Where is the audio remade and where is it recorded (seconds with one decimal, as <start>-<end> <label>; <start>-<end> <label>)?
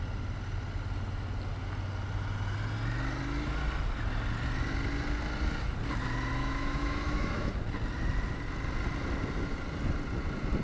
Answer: 0.0-6.4 recorded; 6.4-7.5 remade; 7.5-10.6 recorded